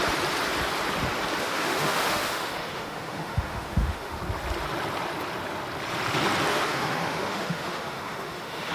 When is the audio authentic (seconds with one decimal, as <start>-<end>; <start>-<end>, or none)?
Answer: 0.0-1.4; 4.2-6.5